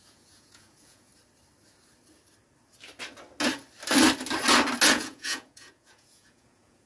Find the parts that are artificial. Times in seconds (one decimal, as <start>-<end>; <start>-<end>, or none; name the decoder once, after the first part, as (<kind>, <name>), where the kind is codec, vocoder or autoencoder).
0.0-1.1 (vocoder, Vocos); 4.9-6.9